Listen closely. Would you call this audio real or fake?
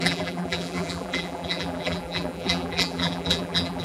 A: fake